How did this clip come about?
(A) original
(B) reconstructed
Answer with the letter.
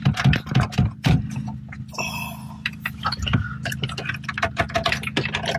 A